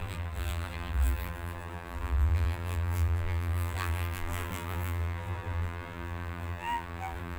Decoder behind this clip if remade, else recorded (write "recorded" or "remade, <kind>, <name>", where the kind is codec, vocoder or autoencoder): remade, vocoder, BigVGAN v2